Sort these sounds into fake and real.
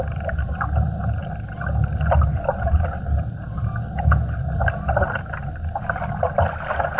real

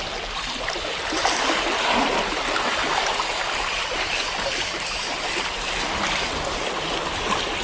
real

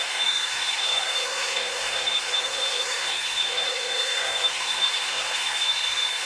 fake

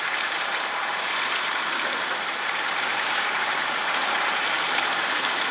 fake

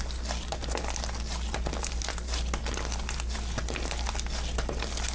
real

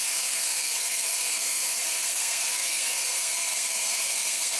fake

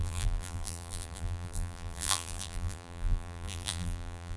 fake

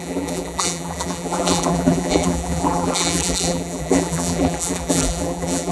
fake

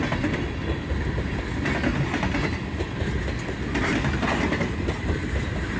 real